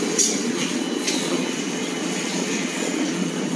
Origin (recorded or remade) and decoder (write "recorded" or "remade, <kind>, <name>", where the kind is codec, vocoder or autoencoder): remade, vocoder, Vocos